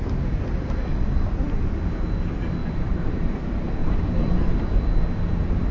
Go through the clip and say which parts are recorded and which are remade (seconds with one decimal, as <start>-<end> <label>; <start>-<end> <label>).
0.0-2.6 recorded; 2.6-3.3 remade; 3.3-3.8 recorded; 3.8-4.6 remade; 4.6-5.7 recorded